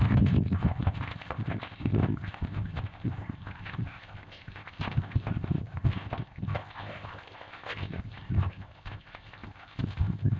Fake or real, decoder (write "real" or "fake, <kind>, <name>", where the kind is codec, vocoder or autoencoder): fake, codec, ZipCodec